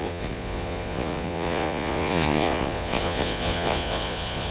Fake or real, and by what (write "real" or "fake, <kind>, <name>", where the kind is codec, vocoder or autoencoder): fake, vocoder, Vocos